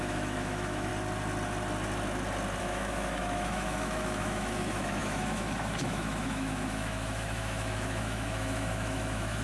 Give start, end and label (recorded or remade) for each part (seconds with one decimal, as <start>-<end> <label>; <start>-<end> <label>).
0.0-0.9 remade; 0.9-2.6 recorded; 2.6-9.4 remade